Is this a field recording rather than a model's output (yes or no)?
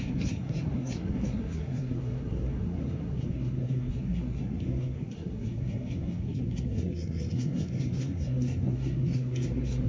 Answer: no